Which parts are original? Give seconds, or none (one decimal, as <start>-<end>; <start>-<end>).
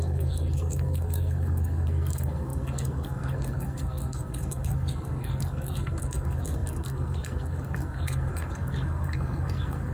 none